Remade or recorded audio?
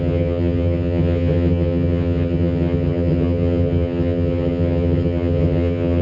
remade